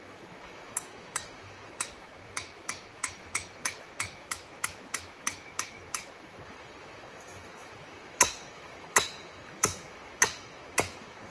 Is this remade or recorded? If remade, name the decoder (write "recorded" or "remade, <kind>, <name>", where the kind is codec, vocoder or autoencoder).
remade, autoencoder, DAC-VAE